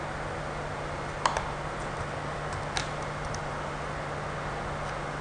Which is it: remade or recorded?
recorded